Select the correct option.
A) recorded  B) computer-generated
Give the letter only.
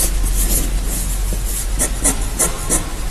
A